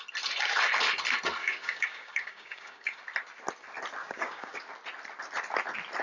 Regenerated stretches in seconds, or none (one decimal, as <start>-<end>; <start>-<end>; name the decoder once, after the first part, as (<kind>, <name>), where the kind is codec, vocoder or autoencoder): 1.4-3.0 (codec, DAC); 4.0-4.6